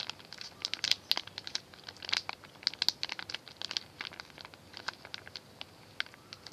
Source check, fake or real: real